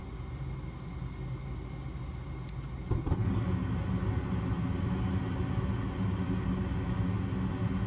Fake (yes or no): no